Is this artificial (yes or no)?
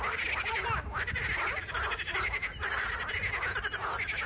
no